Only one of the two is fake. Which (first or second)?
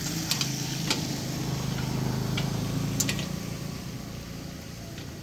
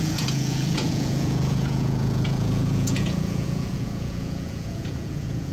second